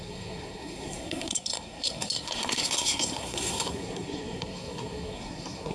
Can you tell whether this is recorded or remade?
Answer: remade